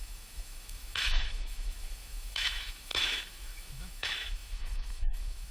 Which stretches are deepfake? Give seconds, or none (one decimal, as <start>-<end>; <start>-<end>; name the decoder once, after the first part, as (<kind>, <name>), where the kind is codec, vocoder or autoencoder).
0.0-5.5 (autoencoder, DAC-VAE)